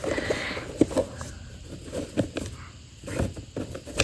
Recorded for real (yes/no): yes